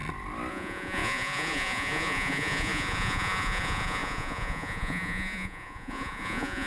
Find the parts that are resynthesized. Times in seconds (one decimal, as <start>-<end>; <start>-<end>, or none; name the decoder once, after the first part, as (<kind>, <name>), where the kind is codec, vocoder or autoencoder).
0.5-6.7 (vocoder, Vocos)